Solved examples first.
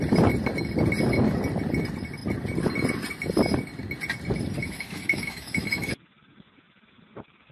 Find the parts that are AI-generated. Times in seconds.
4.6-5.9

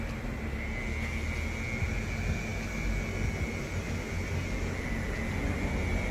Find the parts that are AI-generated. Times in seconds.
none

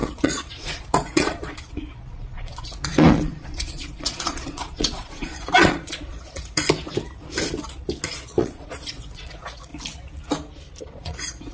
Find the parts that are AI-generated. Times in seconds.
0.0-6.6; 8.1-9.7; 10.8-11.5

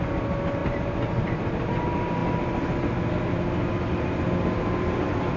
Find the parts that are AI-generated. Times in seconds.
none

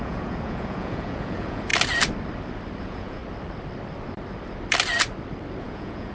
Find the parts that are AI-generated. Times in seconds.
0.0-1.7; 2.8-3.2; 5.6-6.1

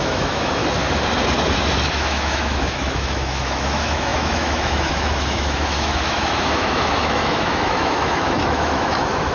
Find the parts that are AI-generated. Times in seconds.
0.0-0.6; 1.9-9.3

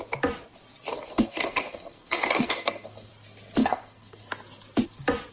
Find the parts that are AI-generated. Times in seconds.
0.9-3.1; 3.6-4.3